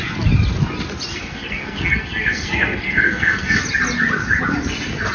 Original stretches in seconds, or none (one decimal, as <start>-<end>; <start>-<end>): 0.0-1.1; 3.6-5.1